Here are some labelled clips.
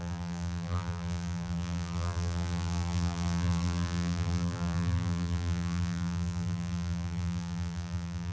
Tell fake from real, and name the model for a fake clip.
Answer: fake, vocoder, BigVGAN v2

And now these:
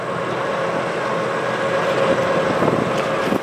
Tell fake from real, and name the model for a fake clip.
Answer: real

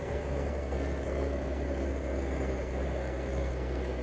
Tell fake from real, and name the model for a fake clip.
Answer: fake, codec, SNAC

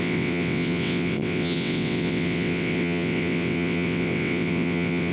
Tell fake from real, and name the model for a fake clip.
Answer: fake, vocoder, WaveNeXt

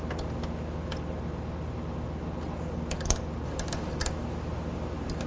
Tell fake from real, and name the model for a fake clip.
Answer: real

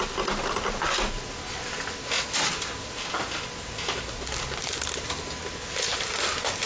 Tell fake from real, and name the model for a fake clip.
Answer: real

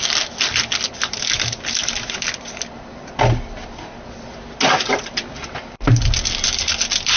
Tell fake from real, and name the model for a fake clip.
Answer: real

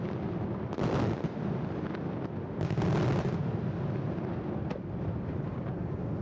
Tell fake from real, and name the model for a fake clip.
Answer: real